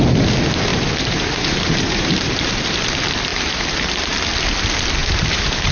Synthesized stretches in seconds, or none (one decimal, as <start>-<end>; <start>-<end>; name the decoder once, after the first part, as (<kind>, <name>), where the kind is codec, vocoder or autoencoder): 0.7-2.8 (vocoder, BigVGAN v2); 3.3-3.9; 5.0-5.7